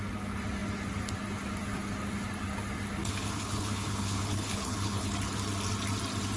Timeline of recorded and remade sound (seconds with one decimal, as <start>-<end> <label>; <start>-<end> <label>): 0.0-3.0 recorded; 3.0-5.1 remade; 5.1-6.4 recorded